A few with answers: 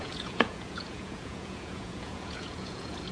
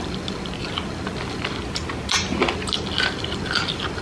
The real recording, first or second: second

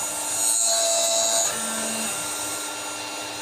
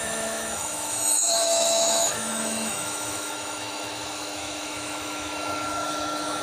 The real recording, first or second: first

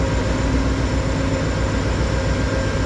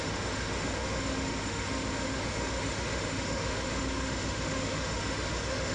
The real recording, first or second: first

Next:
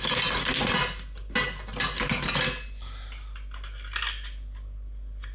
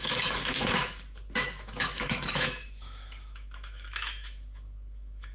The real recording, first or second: first